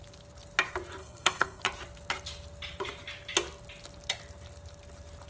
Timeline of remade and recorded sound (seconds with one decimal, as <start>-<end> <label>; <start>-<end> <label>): 0.0-1.0 recorded; 1.0-1.6 remade; 1.6-5.3 recorded